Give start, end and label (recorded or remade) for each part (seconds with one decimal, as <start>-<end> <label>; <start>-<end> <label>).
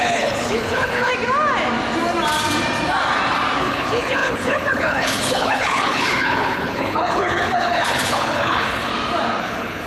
0.0-1.1 remade; 1.1-3.6 recorded; 3.6-8.9 remade; 8.9-9.4 recorded; 9.4-9.9 remade